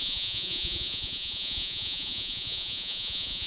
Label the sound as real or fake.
fake